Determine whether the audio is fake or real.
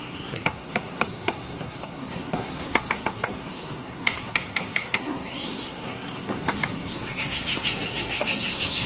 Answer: fake